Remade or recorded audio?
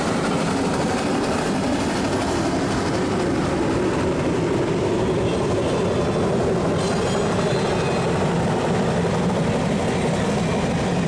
recorded